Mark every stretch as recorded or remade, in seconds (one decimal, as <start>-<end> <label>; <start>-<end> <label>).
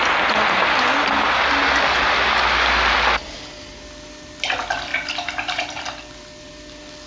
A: 0.0-7.1 recorded